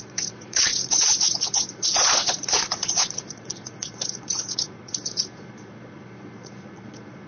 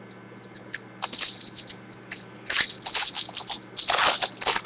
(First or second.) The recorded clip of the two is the second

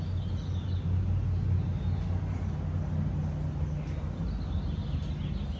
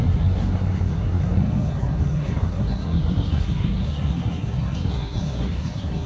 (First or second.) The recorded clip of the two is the first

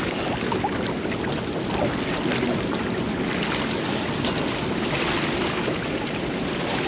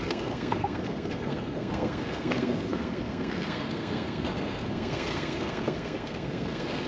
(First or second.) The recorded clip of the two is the first